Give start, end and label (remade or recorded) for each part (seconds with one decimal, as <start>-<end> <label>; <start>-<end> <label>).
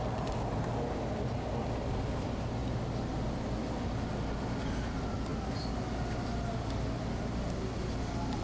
0.0-8.4 recorded